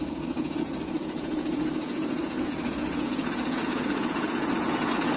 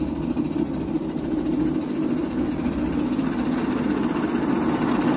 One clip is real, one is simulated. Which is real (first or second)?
second